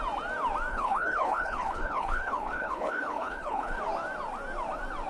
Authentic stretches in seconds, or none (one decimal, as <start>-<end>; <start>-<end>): 0.0-0.7; 3.8-5.1